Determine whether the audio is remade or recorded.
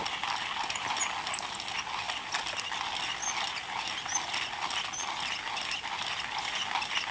recorded